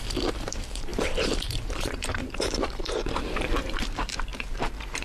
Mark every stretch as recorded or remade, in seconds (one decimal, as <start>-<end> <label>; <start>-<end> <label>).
0.0-4.3 remade; 4.3-5.0 recorded